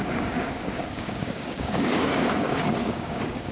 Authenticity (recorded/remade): remade